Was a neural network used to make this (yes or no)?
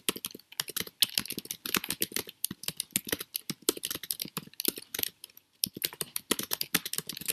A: no